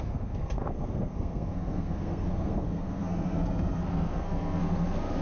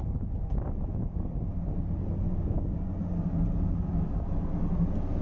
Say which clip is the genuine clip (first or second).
second